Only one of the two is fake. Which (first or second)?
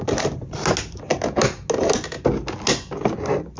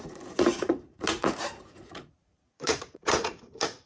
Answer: second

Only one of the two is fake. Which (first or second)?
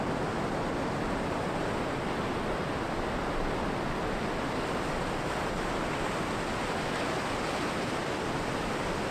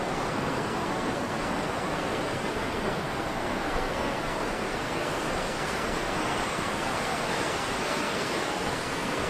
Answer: second